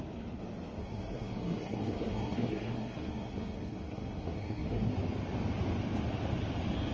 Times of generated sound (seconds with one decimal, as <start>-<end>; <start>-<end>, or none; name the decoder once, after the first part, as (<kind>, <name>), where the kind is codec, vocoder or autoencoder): 0.8-4.9 (codec, SNAC)